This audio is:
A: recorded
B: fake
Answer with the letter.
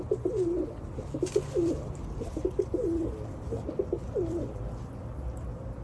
A